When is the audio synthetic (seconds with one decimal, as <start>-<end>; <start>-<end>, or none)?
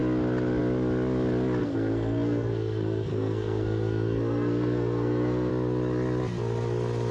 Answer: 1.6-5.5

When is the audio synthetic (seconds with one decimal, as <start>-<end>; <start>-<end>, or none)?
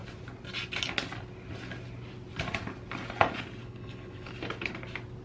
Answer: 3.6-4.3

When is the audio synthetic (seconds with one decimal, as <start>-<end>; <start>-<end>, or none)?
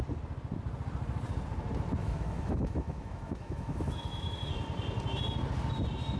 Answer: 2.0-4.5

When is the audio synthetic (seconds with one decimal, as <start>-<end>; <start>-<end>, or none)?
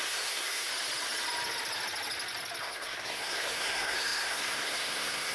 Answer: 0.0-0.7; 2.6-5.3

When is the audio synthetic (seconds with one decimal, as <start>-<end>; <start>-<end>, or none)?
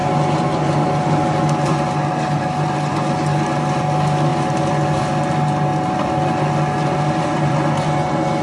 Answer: none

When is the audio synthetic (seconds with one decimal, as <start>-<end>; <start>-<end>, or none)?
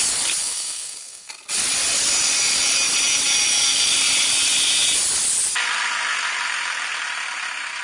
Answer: 0.4-1.3